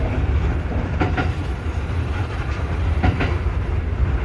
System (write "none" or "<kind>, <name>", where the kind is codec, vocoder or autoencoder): vocoder, BigVGAN v2